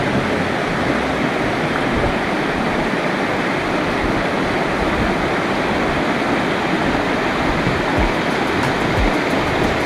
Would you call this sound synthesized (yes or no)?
no